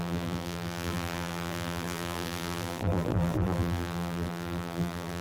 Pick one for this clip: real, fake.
fake